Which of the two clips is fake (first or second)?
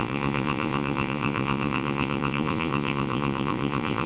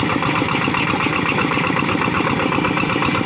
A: first